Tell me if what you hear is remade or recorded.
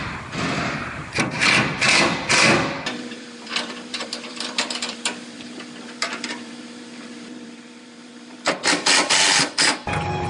remade